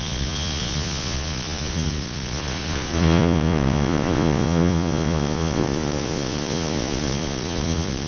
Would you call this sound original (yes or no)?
no